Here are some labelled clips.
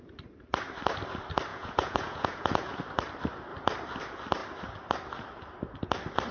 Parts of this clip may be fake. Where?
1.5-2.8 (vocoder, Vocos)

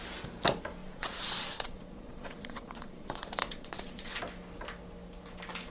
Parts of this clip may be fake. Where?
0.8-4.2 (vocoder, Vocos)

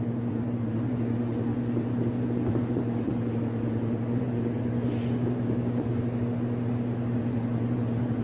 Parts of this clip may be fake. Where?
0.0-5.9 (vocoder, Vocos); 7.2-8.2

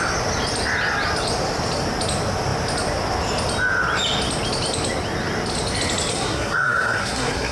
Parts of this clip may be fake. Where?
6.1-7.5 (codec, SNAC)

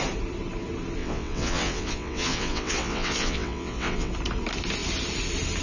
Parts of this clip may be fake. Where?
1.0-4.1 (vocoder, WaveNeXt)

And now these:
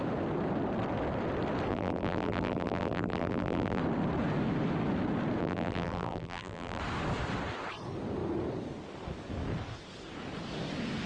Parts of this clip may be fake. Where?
1.7-3.8 (vocoder, BigVGAN v2); 5.4-6.8

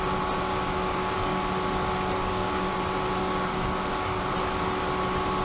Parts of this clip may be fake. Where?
0.5-1.4 (codec, DAC); 2.2-2.8; 3.2-4.2